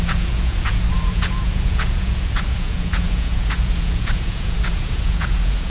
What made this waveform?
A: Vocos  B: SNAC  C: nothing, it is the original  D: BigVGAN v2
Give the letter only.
A